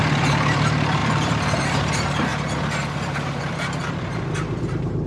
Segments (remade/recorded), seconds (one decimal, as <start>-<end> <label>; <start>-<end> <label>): 0.0-2.3 remade; 2.3-3.4 recorded; 3.4-5.1 remade